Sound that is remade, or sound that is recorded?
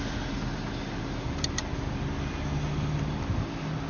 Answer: recorded